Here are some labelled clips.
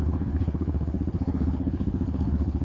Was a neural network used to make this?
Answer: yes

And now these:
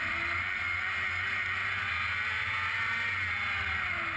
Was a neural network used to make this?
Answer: no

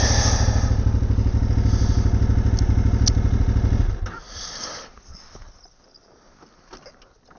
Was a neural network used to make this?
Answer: no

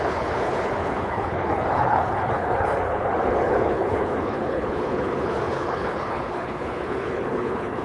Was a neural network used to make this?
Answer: yes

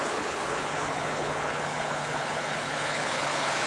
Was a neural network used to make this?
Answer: yes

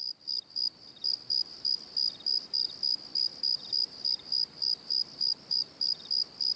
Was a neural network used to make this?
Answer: no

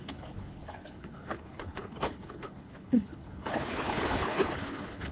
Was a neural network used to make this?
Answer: yes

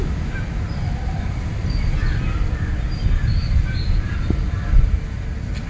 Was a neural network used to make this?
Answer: no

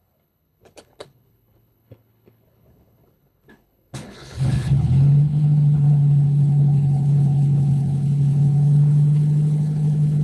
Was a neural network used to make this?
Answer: yes